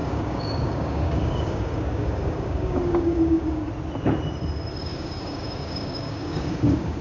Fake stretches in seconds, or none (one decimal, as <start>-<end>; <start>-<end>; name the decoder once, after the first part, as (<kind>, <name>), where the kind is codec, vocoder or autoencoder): 0.0-3.7 (codec, DAC); 4.8-7.0